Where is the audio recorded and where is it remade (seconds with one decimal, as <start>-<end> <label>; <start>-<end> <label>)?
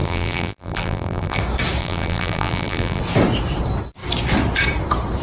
0.0-1.4 remade; 1.4-1.8 recorded; 1.8-3.0 remade; 3.0-5.2 recorded